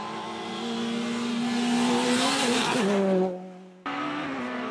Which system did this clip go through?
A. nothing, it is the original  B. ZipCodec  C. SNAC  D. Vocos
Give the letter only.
A